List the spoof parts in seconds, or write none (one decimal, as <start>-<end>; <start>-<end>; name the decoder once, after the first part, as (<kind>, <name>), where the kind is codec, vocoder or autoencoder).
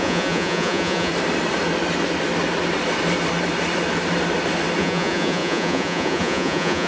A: 0.0-1.1 (vocoder, Vocos); 4.8-6.9